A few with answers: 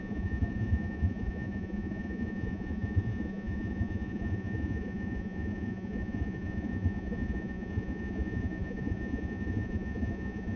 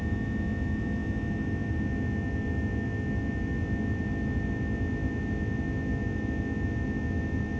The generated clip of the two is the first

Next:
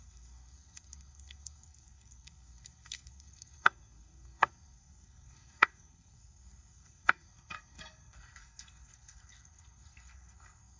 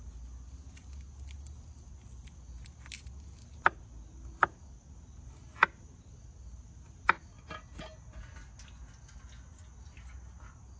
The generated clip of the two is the first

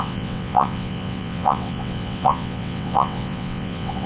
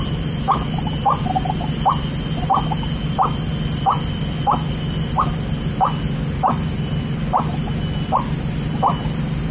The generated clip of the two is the first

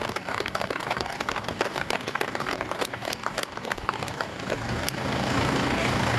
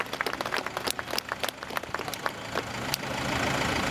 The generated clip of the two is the first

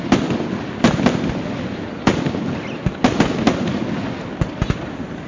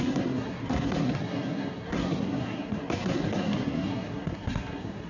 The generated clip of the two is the second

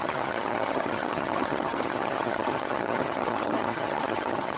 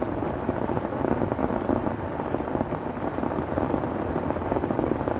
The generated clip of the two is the first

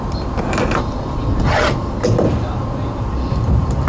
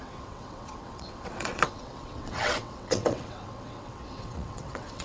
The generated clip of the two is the second